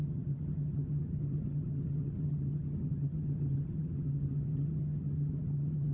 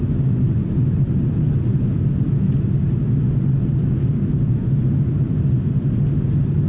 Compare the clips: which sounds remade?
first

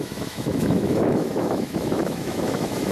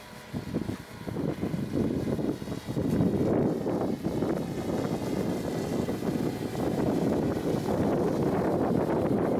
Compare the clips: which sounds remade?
first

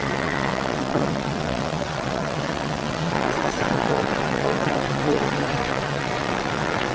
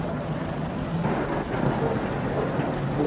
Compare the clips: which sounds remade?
first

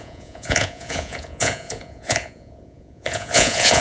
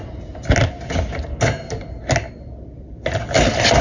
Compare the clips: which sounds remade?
first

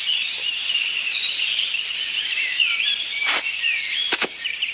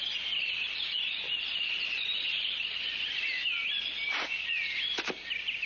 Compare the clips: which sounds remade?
first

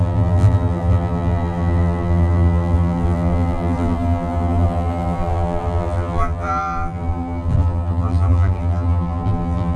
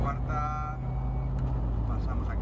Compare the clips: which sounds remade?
first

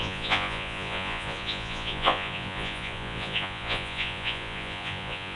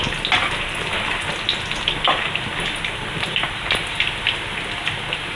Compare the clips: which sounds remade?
first